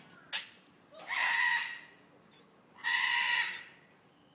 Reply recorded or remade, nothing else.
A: recorded